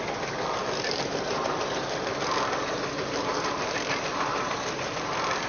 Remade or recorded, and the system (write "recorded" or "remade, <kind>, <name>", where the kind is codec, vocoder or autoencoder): recorded